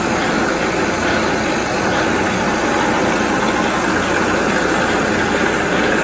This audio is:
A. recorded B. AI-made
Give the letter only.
A